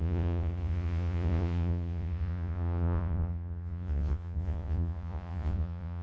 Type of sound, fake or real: fake